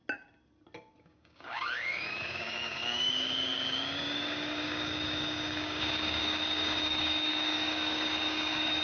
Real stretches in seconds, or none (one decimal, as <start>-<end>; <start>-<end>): 0.0-1.0